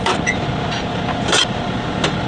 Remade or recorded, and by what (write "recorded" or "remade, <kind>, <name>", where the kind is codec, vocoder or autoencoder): recorded